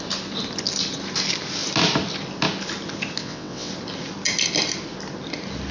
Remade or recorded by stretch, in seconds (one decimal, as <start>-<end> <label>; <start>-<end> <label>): 0.0-3.2 recorded; 3.2-3.7 remade; 3.7-5.7 recorded